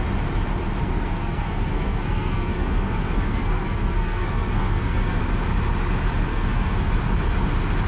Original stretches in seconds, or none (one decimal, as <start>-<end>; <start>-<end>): 0.0-0.8; 5.2-6.3; 6.9-7.9